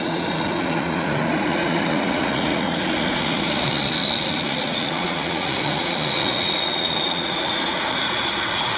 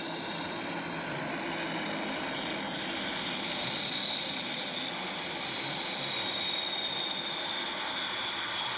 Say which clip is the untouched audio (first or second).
second